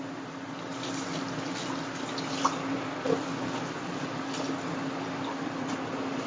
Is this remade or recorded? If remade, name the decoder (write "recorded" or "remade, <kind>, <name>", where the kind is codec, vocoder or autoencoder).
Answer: recorded